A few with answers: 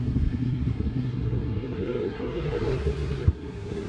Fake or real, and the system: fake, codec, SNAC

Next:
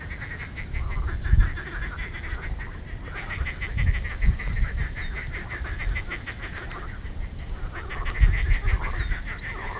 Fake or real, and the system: real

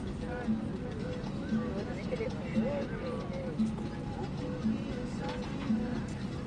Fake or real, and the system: real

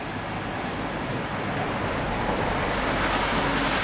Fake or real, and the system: real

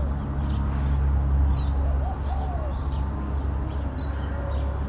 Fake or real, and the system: real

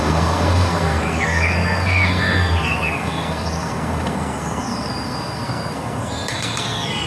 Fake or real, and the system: fake, codec, SNAC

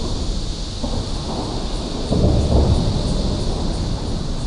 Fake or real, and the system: real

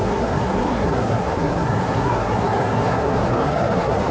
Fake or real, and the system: fake, codec, SNAC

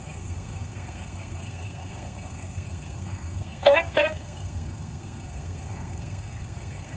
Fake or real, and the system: fake, codec, SNAC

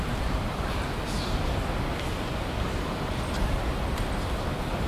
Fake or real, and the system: real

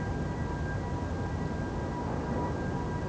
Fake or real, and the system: real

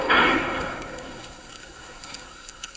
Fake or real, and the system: fake, codec, SNAC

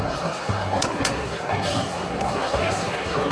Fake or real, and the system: fake, codec, SNAC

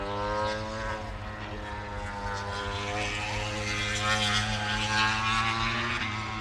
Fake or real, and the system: real